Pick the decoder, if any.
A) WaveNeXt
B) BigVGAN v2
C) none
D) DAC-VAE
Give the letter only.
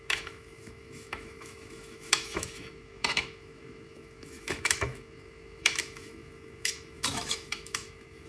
D